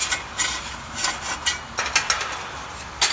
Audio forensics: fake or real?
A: real